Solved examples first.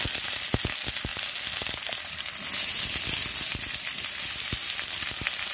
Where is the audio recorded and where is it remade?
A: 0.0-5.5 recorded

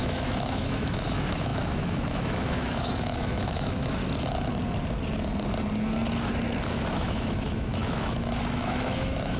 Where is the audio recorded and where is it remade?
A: 0.0-4.0 remade; 4.0-6.9 recorded; 6.9-9.4 remade

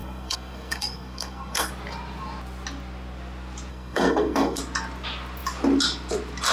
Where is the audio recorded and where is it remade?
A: 0.0-1.7 remade; 1.7-3.7 recorded; 3.7-4.6 remade; 4.6-6.5 recorded